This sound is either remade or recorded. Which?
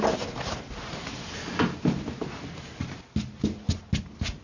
recorded